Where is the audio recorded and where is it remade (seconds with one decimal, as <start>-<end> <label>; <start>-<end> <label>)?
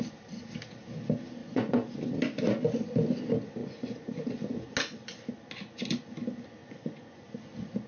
0.0-1.4 recorded; 1.4-2.0 remade; 2.0-3.6 recorded; 3.6-4.1 remade; 4.1-6.6 recorded; 6.6-7.2 remade; 7.2-7.9 recorded